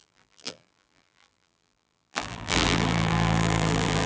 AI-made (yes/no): yes